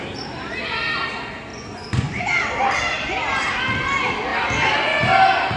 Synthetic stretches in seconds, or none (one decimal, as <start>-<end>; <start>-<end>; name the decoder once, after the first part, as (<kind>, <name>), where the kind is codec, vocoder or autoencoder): 1.5-2.2 (vocoder, Vocos)